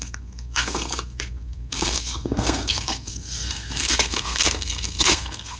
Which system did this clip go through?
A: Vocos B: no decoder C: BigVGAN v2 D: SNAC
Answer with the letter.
D